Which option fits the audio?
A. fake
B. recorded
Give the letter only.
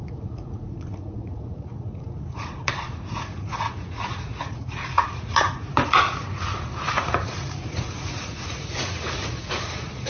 A